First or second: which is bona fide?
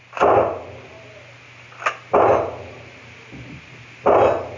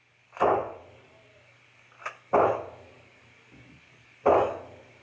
first